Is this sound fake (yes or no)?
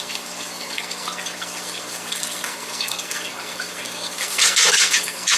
yes